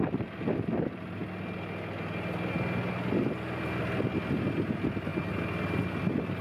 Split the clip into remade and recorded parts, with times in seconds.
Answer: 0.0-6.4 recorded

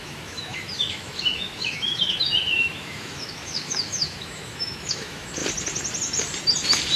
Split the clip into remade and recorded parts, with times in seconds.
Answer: 0.0-5.4 remade; 5.4-7.0 recorded

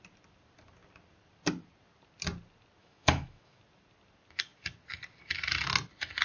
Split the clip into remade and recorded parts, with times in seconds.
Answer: 0.0-2.8 recorded; 2.8-3.6 remade; 3.6-6.2 recorded

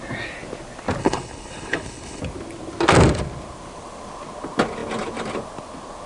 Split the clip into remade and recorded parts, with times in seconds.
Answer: 0.0-1.0 recorded; 1.0-2.2 remade; 2.2-6.1 recorded

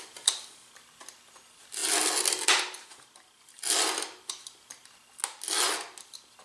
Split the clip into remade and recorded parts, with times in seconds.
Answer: 0.0-6.4 recorded

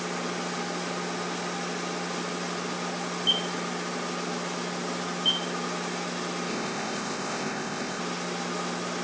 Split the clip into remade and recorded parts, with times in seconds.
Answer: 0.0-6.5 recorded; 6.5-8.0 remade; 8.0-9.0 recorded